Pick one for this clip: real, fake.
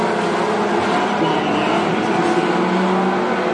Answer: real